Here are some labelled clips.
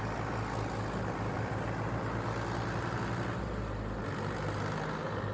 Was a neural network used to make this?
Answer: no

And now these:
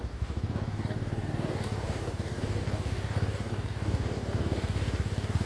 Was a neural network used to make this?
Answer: yes